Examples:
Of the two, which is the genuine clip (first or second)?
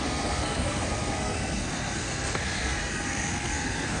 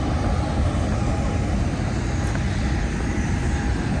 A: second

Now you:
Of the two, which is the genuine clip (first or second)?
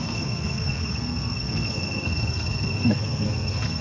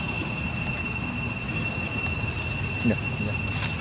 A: second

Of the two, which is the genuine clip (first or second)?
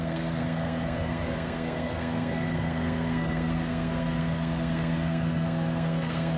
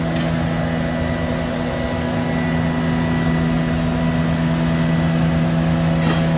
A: second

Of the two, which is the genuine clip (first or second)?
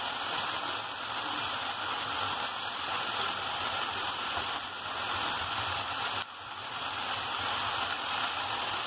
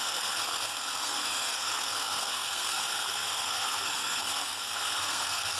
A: first